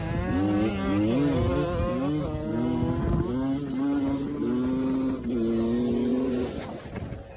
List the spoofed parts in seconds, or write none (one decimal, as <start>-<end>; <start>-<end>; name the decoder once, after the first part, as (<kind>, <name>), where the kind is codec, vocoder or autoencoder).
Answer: 6.1-7.0 (vocoder, Vocos)